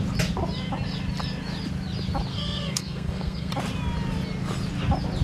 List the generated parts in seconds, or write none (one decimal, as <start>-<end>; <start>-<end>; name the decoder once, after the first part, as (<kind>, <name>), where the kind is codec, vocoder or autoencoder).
2.3-3.5 (codec, SNAC)